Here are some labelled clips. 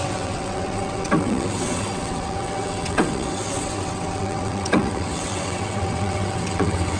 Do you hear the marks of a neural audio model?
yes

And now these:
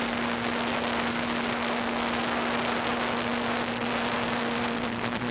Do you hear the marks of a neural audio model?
no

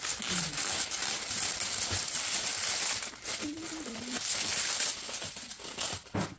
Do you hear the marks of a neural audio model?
no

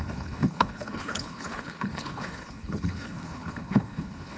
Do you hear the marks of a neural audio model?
yes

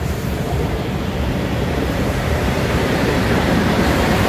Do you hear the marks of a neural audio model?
yes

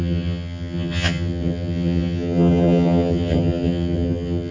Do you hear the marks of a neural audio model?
yes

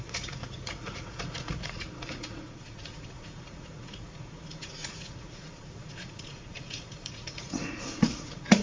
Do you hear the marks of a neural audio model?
yes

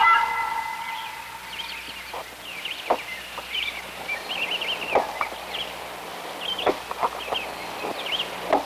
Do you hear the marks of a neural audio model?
no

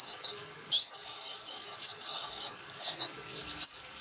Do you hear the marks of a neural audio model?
yes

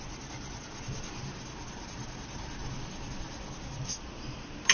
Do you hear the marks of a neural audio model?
no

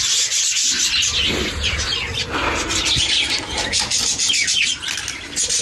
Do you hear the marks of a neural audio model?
no